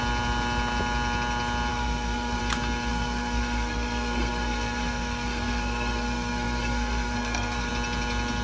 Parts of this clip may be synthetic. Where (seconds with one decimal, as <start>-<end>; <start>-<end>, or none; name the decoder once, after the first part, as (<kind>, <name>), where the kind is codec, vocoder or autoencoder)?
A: 1.7-2.4 (codec, SNAC); 2.9-7.7